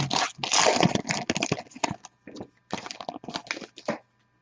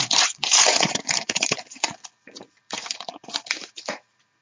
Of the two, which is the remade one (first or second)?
second